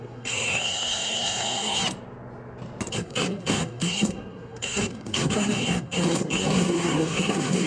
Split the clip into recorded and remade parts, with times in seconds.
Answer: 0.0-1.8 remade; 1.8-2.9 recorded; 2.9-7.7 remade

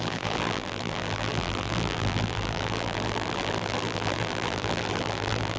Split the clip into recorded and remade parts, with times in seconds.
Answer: 0.0-5.6 remade

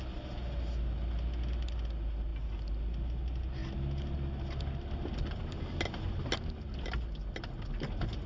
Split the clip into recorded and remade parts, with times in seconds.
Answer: 0.0-8.3 recorded

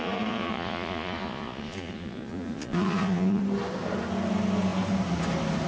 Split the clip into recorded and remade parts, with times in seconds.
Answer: 0.0-3.4 remade; 3.4-5.7 recorded

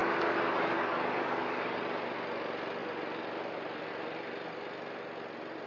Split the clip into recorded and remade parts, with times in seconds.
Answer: 0.0-1.8 remade; 1.8-5.7 recorded